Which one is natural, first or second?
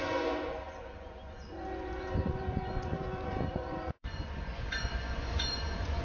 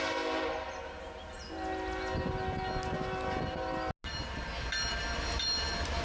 second